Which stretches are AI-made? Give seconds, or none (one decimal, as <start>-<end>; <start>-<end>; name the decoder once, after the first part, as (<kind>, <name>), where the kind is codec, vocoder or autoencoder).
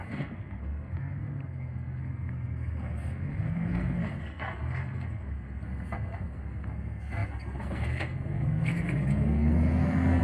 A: 0.0-10.2 (codec, SNAC)